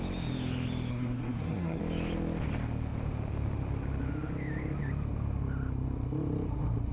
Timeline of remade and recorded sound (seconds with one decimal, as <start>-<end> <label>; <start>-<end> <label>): 0.0-0.9 recorded; 0.9-1.8 remade; 1.8-6.9 recorded